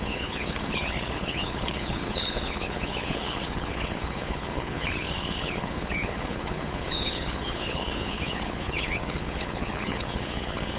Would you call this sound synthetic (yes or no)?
yes